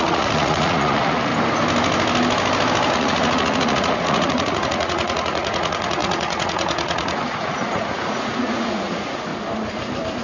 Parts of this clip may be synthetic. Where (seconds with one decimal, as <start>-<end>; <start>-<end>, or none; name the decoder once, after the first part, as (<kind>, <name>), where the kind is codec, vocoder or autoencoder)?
0.0-1.3 (vocoder, Vocos); 2.9-9.3